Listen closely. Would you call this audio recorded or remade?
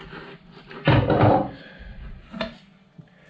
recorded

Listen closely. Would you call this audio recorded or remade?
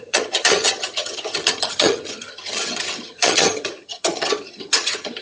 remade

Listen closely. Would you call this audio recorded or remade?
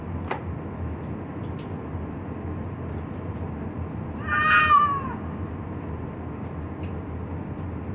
recorded